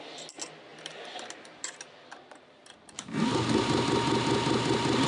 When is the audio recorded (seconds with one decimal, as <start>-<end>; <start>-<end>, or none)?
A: 0.0-0.7; 3.8-5.1